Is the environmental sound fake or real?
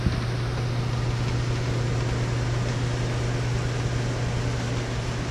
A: real